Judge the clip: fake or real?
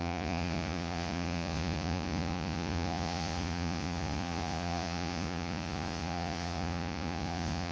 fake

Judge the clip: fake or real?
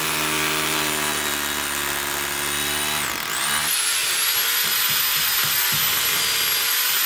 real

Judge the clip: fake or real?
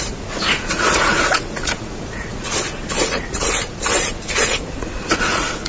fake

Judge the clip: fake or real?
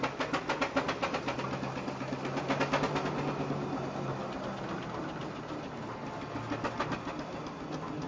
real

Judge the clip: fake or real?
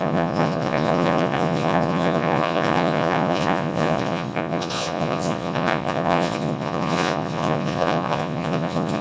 fake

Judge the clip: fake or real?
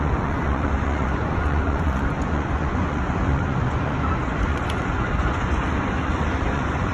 fake